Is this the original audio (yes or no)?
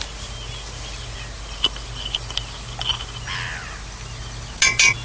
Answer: yes